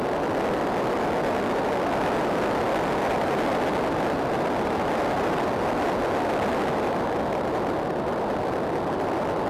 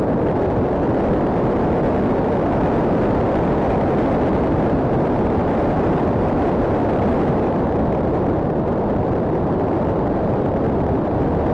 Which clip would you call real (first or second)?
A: first